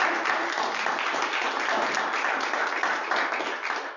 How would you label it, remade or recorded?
recorded